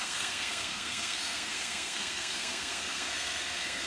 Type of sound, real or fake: fake